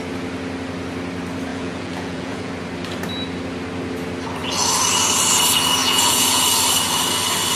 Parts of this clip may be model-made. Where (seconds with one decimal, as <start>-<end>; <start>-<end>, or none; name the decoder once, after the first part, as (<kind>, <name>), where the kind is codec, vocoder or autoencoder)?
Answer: 1.5-2.5 (vocoder, Vocos); 5.8-6.4